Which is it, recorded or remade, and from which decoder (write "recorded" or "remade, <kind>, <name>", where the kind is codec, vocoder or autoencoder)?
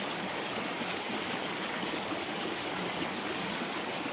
remade, codec, DAC